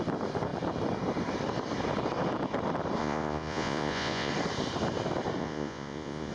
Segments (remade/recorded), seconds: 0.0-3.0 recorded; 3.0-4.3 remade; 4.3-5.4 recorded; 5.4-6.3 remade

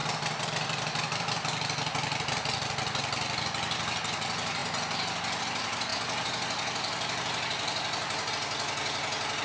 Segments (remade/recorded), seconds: 0.0-9.4 recorded

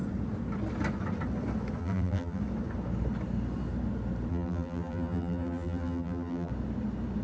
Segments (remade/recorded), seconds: 0.0-1.8 recorded; 1.8-2.4 remade; 2.4-4.3 recorded; 4.3-6.5 remade; 6.5-7.2 recorded

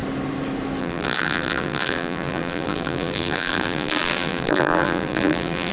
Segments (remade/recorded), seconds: 0.0-0.8 recorded; 0.8-5.7 remade

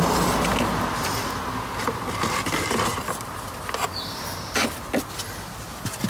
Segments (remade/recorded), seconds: 0.0-6.1 recorded

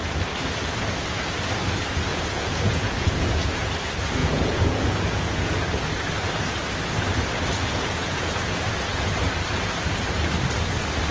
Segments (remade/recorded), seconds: 0.0-2.1 recorded; 2.1-3.7 remade; 3.7-4.2 recorded; 4.2-5.6 remade; 5.6-7.5 recorded; 7.5-9.1 remade; 9.1-11.1 recorded

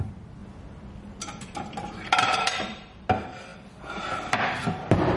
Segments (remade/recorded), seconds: 0.0-0.4 recorded; 0.4-3.1 remade; 3.1-5.2 recorded